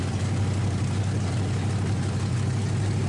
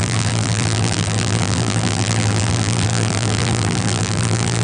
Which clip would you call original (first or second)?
first